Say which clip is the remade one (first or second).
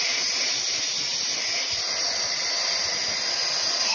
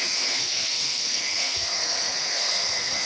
second